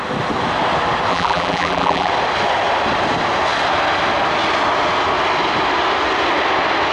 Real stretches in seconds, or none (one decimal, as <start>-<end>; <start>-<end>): 0.0-1.1; 2.1-6.9